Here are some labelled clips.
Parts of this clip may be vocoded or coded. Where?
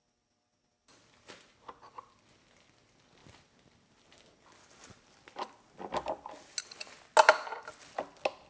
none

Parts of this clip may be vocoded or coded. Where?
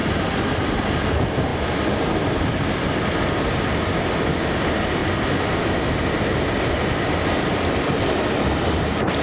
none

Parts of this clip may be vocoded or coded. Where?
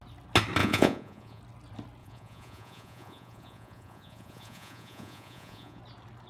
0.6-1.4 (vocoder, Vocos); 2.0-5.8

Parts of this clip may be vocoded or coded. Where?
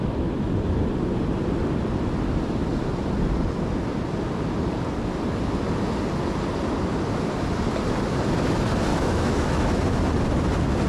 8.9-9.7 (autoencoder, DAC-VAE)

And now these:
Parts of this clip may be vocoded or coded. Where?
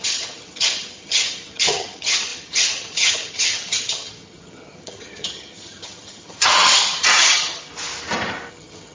0.0-7.7 (vocoder, HiFi-GAN); 8.5-8.9